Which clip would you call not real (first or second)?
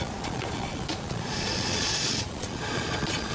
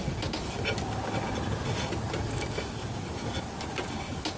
first